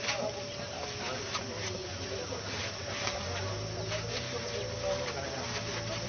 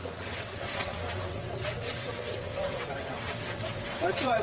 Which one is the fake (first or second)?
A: second